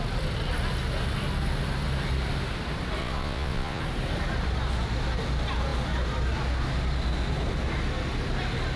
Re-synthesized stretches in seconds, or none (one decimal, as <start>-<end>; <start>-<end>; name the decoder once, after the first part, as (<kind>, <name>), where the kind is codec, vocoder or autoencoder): 3.0-3.8 (vocoder, Vocos)